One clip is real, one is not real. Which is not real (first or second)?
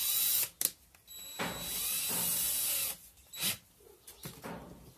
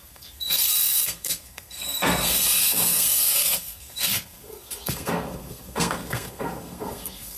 second